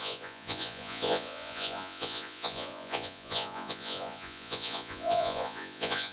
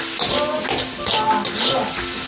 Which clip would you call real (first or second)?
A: second